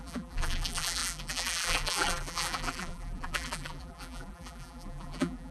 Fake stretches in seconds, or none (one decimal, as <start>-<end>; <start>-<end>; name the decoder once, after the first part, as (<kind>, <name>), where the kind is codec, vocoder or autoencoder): 0.0-5.5 (vocoder, BigVGAN v2)